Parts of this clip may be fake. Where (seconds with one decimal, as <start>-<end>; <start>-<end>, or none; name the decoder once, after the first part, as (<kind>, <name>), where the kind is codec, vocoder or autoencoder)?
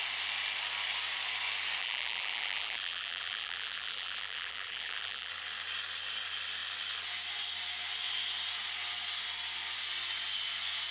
1.8-5.3 (vocoder, BigVGAN v2)